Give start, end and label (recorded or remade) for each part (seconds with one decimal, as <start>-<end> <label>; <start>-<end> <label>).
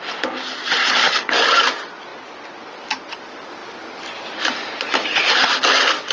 0.0-0.8 recorded; 0.8-1.3 remade; 1.3-6.1 recorded